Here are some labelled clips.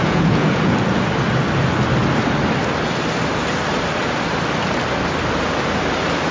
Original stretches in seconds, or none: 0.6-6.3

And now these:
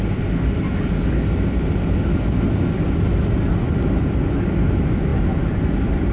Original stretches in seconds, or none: 0.0-6.1

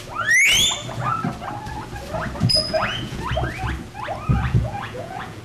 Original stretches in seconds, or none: 0.0-2.4; 3.2-4.3

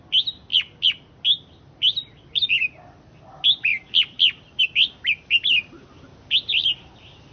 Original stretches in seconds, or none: 0.0-7.3

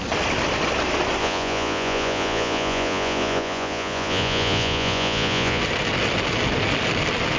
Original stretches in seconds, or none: 0.0-1.2; 5.6-7.4

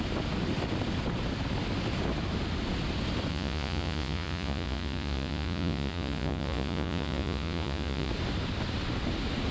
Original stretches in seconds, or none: 0.0-3.3; 8.1-9.5

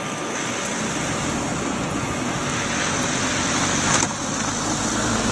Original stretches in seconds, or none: 0.0-1.5; 2.2-5.3